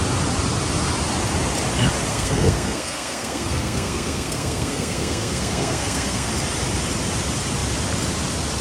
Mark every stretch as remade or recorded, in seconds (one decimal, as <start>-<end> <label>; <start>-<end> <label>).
0.0-2.1 recorded; 2.1-6.3 remade; 6.3-8.6 recorded